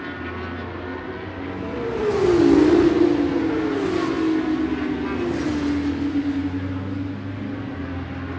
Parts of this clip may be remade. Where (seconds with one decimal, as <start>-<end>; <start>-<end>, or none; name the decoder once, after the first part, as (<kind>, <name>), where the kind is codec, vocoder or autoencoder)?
none